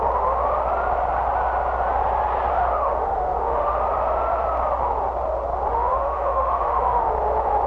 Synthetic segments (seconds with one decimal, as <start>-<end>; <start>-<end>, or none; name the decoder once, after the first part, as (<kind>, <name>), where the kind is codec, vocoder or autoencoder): 2.5-3.8 (autoencoder, DAC-VAE); 5.7-7.1